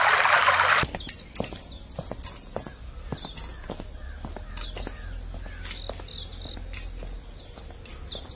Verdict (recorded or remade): recorded